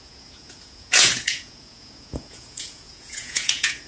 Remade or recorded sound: remade